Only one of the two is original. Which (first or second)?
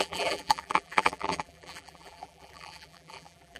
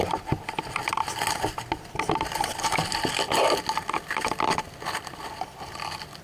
second